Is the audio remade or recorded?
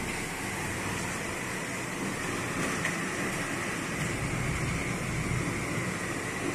recorded